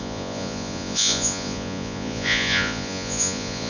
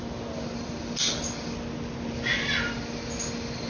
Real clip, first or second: second